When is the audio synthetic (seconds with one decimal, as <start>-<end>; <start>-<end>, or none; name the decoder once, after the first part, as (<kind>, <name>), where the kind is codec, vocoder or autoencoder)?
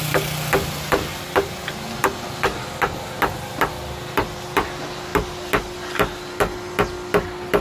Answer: none